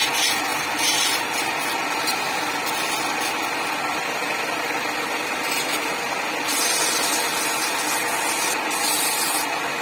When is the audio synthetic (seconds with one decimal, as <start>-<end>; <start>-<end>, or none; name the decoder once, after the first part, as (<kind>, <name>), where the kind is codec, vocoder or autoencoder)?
none